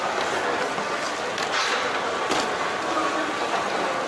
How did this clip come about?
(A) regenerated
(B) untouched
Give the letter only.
B